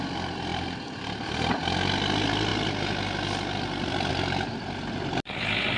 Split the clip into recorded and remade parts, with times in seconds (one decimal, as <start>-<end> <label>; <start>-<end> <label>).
0.0-0.5 recorded; 0.5-1.3 remade; 1.3-5.8 recorded